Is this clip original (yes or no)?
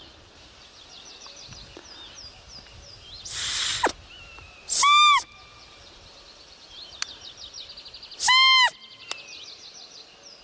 yes